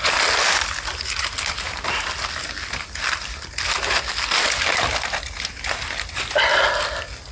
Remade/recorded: recorded